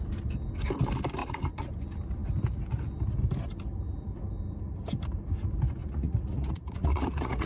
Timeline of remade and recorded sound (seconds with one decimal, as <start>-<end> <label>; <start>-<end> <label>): 0.0-1.2 recorded; 1.2-1.7 remade; 1.7-5.8 recorded; 5.8-7.5 remade